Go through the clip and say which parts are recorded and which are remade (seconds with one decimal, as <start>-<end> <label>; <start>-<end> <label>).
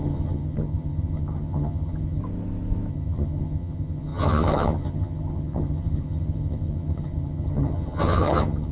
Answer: 0.0-2.2 remade; 2.2-2.9 recorded; 2.9-8.7 remade